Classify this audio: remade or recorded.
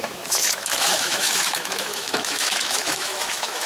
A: remade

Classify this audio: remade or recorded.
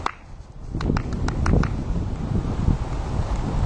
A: recorded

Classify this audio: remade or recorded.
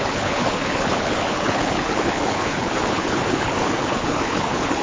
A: remade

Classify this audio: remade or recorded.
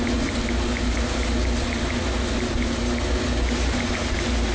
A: recorded